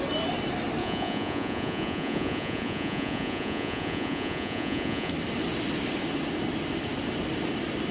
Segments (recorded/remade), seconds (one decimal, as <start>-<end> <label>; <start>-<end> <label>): 0.0-0.8 recorded; 0.8-5.1 remade; 5.1-7.9 recorded